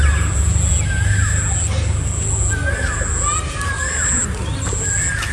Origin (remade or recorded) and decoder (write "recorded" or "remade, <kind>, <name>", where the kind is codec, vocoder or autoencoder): recorded